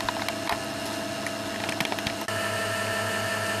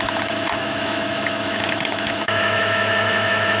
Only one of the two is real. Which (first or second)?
first